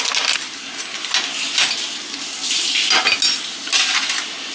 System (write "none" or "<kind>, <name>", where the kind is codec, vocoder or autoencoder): none